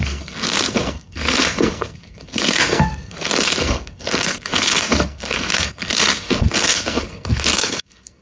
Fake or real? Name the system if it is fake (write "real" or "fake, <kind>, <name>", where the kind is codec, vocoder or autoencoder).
fake, codec, SNAC